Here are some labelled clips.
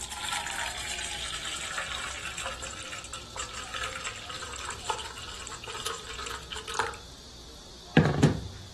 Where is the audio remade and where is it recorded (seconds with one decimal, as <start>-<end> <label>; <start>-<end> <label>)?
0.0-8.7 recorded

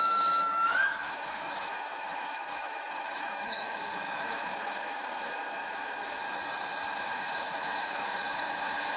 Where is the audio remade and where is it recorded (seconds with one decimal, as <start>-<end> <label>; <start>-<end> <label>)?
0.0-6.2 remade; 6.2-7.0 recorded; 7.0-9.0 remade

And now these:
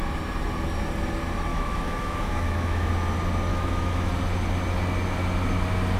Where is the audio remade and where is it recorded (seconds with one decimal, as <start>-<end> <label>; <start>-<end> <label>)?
0.0-1.5 recorded; 1.5-2.9 remade; 2.9-3.5 recorded; 3.5-4.1 remade; 4.1-6.0 recorded

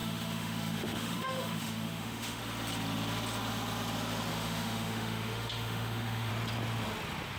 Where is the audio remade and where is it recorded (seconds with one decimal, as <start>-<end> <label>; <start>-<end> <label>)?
0.0-2.4 remade; 2.4-4.3 recorded; 4.3-6.3 remade; 6.3-7.4 recorded

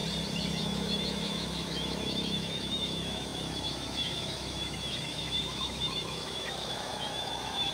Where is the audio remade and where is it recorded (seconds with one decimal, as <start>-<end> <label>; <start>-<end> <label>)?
0.0-0.6 recorded; 0.6-7.7 remade

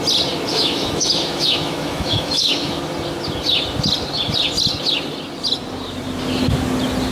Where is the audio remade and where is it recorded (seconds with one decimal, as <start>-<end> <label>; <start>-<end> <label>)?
0.0-0.5 recorded; 0.5-2.8 remade; 2.8-7.1 recorded

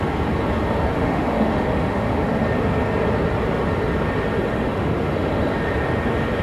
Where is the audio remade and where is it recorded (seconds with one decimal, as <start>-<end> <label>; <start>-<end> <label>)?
0.0-0.9 recorded; 0.9-2.3 remade; 2.3-4.5 recorded; 4.5-5.3 remade; 5.3-6.4 recorded